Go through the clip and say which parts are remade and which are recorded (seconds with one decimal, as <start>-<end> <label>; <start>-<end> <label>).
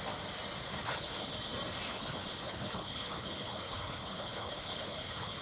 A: 0.0-0.7 recorded; 0.7-1.3 remade; 1.3-1.9 recorded; 1.9-5.4 remade